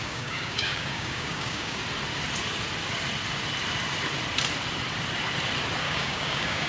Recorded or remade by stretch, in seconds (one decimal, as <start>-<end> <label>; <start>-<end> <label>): 0.0-1.8 remade; 1.8-5.8 recorded; 5.8-6.7 remade